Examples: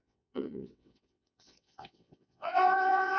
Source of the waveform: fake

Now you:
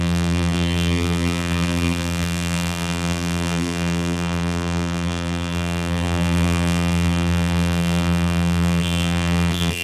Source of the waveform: fake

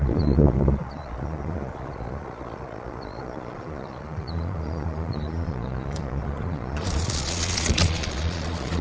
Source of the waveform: fake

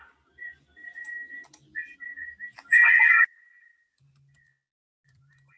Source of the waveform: real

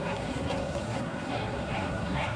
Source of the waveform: fake